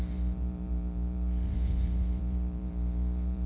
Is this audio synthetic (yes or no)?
yes